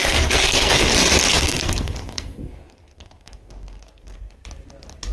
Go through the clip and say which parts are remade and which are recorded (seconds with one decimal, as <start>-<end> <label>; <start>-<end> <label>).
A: 0.0-0.9 remade; 0.9-1.3 recorded; 1.3-4.4 remade; 4.4-5.1 recorded